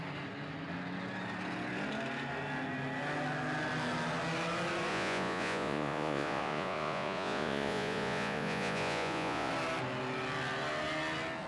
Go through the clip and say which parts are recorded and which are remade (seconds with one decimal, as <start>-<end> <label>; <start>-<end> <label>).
0.0-4.9 recorded; 4.9-9.5 remade; 9.5-11.5 recorded